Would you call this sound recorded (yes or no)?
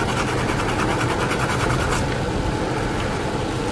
yes